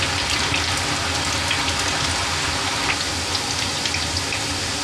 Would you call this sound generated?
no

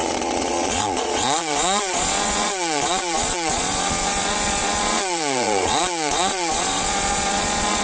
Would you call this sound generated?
yes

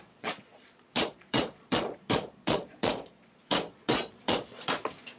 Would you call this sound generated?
yes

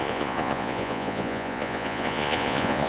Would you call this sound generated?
yes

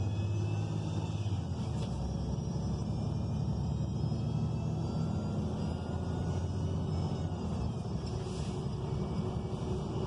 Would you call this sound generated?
no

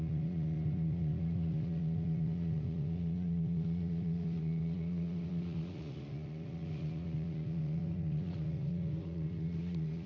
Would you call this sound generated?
yes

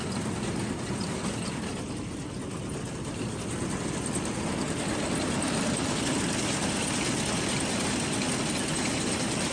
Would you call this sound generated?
no